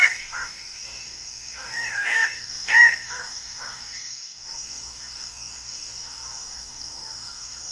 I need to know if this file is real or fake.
fake